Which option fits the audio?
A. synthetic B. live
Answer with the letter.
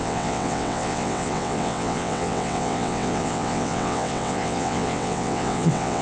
A